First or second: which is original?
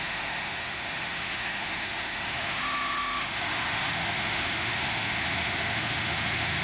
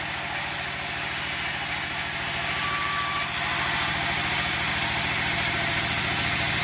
second